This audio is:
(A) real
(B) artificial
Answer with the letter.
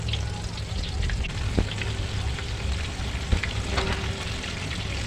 A